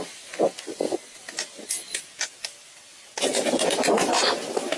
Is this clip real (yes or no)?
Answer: yes